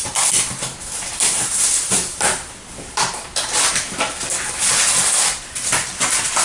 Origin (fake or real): fake